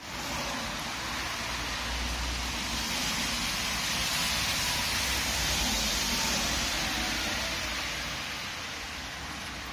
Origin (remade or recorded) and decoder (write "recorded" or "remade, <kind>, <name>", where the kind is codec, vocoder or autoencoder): recorded